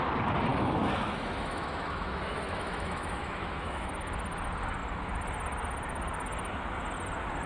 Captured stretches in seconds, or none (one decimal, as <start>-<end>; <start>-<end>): 0.0-0.5; 3.9-7.5